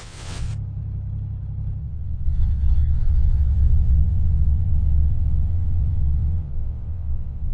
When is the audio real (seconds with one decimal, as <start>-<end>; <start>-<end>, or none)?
0.5-1.8